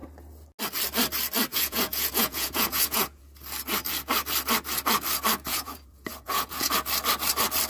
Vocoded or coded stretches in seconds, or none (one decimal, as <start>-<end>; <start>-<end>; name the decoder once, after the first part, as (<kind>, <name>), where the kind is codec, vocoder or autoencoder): 1.5-3.2 (vocoder, Vocos); 5.5-6.7